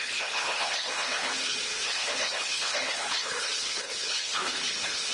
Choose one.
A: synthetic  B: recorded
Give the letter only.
A